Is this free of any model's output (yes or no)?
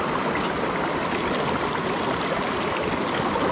yes